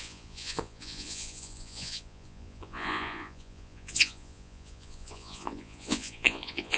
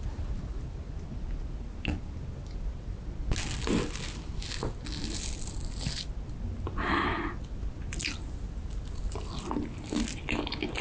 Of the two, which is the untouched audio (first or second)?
second